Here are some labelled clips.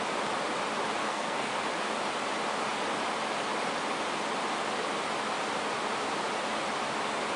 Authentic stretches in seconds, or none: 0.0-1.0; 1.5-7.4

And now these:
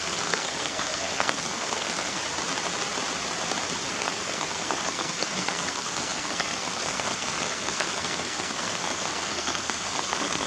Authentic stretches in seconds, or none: 2.2-3.9

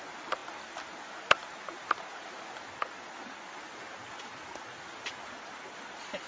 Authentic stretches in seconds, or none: 0.0-6.3